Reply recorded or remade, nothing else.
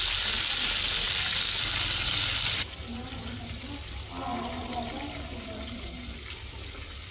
recorded